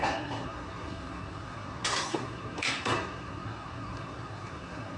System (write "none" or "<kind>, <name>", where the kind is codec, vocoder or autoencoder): codec, SNAC